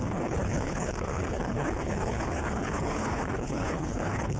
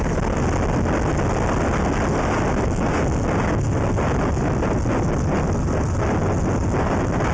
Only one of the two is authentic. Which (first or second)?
second